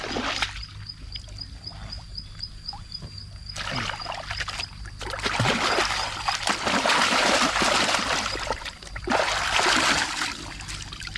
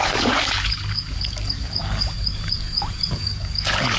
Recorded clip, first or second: first